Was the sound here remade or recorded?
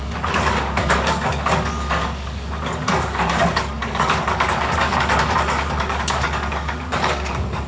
remade